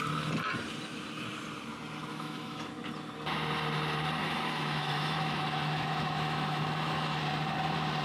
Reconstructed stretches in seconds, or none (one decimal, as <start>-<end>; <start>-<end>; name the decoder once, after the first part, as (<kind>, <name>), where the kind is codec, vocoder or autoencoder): 2.1-2.7 (autoencoder, DAC-VAE); 4.2-7.2